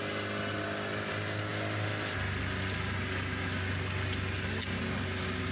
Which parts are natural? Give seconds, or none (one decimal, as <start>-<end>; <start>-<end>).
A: 0.0-5.5